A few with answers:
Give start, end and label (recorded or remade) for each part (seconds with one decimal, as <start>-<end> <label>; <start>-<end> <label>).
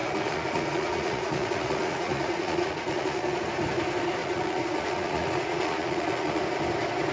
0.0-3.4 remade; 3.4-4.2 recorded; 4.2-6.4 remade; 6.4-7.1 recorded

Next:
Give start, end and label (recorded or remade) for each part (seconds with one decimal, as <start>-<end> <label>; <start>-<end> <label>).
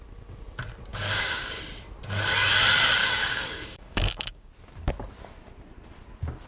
0.0-0.9 recorded; 0.9-1.6 remade; 1.6-3.0 recorded; 3.0-4.5 remade; 4.5-6.5 recorded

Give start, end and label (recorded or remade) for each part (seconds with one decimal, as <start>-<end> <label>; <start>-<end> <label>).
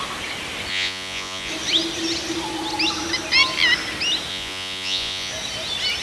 0.0-0.7 recorded; 0.7-1.5 remade; 1.5-4.3 recorded; 4.3-5.3 remade; 5.3-6.0 recorded